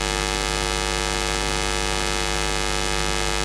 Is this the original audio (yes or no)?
yes